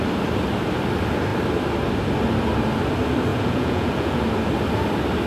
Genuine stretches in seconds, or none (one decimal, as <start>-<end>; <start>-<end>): 0.0-3.3; 4.2-5.3

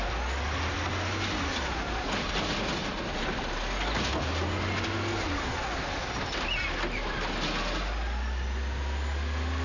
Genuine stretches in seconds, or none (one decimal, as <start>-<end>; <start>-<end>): 0.0-9.6

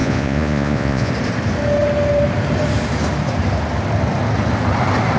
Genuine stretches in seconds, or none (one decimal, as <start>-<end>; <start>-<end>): 1.1-5.2

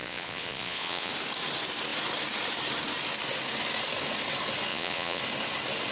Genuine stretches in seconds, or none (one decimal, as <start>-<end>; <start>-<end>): 1.1-4.7; 5.2-5.9

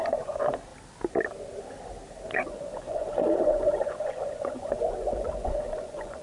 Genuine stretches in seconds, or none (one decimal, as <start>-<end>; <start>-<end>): 0.7-2.3